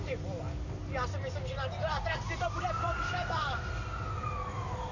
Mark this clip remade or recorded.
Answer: recorded